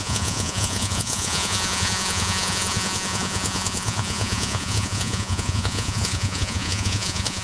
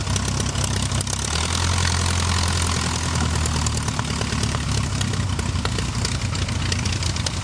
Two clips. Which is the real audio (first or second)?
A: second